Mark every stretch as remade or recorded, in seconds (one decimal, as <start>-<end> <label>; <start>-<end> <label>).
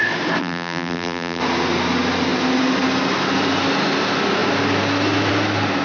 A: 0.0-0.4 recorded; 0.4-1.4 remade; 1.4-5.8 recorded